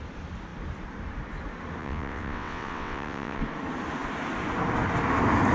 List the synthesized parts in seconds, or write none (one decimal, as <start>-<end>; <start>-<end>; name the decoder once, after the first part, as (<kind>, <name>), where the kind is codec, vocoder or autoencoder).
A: 1.8-3.4 (vocoder, WaveNeXt)